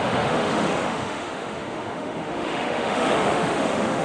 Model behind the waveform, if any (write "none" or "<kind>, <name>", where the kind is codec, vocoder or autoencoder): autoencoder, DAC-VAE